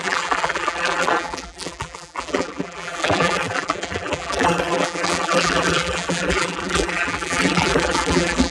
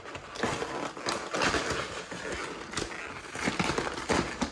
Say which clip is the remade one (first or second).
first